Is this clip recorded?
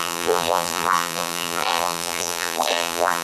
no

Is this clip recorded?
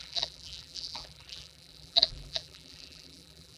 no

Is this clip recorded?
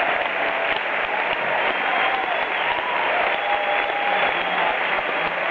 yes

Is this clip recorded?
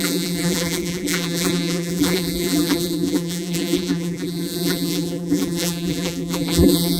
no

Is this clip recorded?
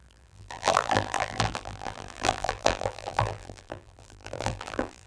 no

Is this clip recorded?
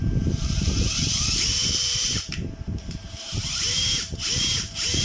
no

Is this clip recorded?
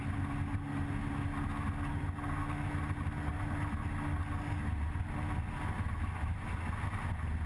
yes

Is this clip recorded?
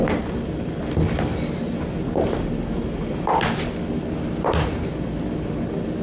yes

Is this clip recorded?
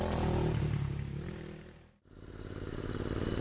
yes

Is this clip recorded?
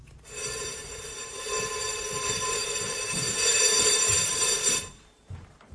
no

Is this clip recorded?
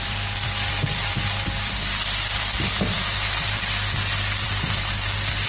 no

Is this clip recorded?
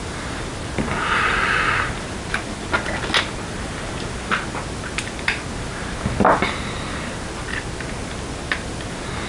yes